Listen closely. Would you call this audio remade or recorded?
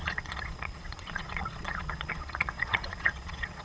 remade